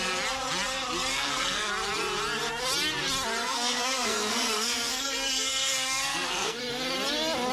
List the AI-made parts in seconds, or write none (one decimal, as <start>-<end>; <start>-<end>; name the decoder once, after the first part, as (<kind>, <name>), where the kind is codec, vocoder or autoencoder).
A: 1.1-1.7 (codec, SNAC); 3.4-6.6